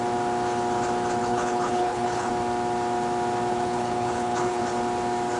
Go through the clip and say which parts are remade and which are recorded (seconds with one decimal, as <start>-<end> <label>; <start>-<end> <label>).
0.0-1.2 recorded; 1.2-2.3 remade; 2.3-3.5 recorded; 3.5-4.6 remade; 4.6-5.4 recorded